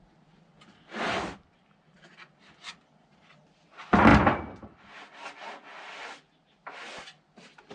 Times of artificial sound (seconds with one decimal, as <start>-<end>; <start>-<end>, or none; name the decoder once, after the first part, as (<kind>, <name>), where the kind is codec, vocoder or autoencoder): none